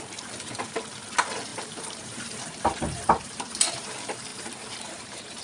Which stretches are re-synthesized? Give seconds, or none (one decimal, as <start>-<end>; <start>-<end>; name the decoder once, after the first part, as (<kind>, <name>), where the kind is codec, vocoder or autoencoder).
1.5-3.9 (vocoder, BigVGAN v2); 4.3-5.4